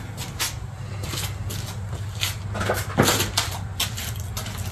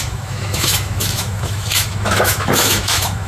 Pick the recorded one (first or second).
first